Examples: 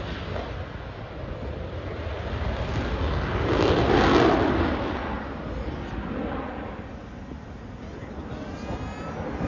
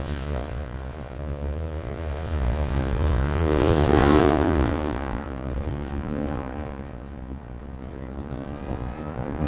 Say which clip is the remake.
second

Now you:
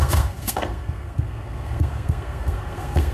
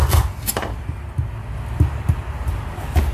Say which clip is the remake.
first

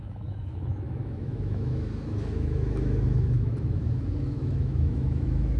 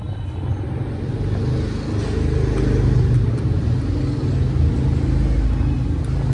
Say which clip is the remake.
first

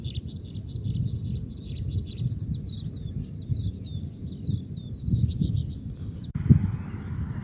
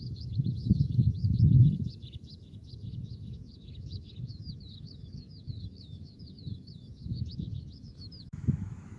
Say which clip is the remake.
second